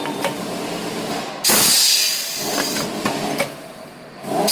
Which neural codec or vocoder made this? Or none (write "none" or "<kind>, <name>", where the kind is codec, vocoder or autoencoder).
none